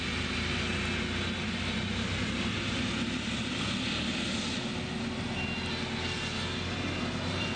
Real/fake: real